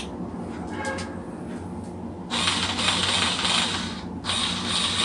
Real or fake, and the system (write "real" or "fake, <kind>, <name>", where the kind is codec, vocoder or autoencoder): real